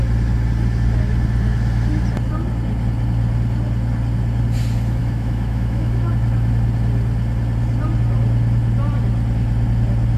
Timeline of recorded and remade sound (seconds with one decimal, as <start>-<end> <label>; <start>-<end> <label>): 0.0-5.0 recorded; 5.0-6.1 remade; 6.1-10.2 recorded